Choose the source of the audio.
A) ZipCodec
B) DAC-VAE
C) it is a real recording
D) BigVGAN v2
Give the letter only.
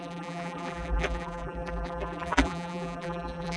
D